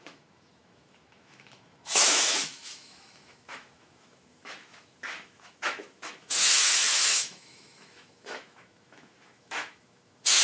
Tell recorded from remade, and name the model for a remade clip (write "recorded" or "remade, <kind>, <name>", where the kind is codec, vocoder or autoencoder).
remade, autoencoder, DAC-VAE